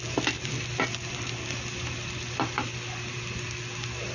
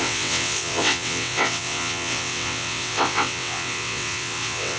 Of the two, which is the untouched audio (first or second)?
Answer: first